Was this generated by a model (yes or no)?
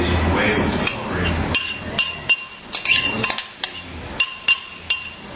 no